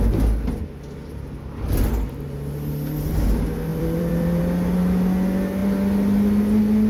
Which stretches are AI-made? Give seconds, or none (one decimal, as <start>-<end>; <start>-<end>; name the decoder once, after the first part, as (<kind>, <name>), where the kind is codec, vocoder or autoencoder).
3.7-4.4 (vocoder, BigVGAN v2)